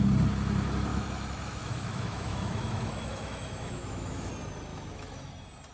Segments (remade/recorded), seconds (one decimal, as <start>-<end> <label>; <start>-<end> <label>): 0.0-0.9 recorded; 0.9-4.3 remade; 4.3-4.7 recorded; 4.7-5.3 remade; 5.3-5.7 recorded